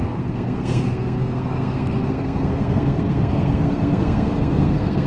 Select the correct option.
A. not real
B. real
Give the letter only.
A